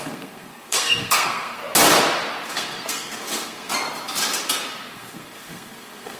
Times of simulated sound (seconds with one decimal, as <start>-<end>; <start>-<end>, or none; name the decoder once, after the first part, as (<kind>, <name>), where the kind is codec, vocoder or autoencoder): 0.0-1.6 (codec, SNAC); 2.5-3.7; 4.9-6.2